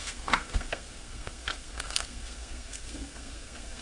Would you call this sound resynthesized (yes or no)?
yes